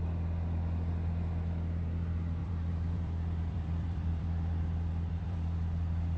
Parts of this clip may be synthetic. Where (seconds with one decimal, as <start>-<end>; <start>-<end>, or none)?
2.4-6.2